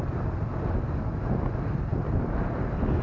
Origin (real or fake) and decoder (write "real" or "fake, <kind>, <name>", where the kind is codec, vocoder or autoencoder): real